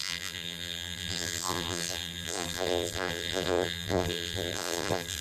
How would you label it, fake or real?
fake